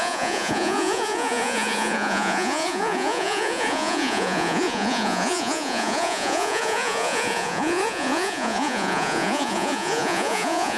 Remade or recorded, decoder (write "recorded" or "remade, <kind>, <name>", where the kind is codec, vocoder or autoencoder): remade, vocoder, Vocos